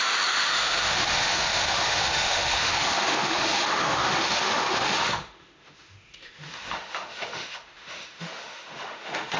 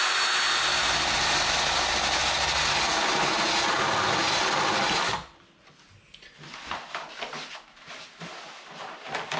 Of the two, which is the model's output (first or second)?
first